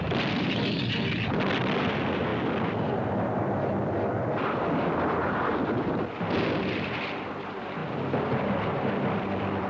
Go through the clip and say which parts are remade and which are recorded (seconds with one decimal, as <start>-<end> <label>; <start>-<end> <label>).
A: 0.0-2.3 remade; 2.3-6.6 recorded; 6.6-9.7 remade